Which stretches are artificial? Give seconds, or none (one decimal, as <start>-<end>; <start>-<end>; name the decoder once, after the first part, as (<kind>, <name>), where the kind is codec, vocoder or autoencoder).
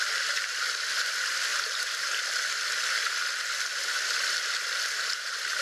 none